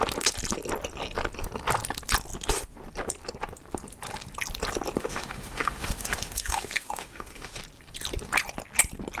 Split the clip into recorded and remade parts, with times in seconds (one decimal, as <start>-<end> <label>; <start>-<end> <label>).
0.0-5.0 recorded; 5.0-7.6 remade; 7.6-9.2 recorded